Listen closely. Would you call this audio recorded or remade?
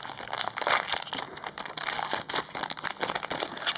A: recorded